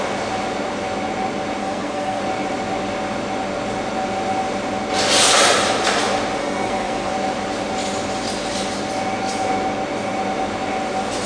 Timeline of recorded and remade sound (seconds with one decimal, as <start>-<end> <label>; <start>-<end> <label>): 0.0-1.6 recorded; 1.6-2.2 remade; 2.2-6.4 recorded; 6.4-7.1 remade; 7.1-11.3 recorded